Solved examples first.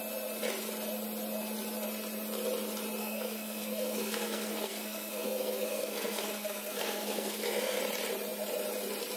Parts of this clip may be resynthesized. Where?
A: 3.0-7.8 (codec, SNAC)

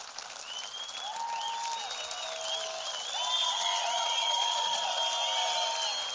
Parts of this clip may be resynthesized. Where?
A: 3.4-5.0 (vocoder, Vocos)